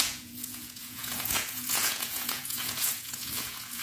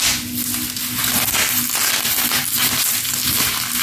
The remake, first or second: first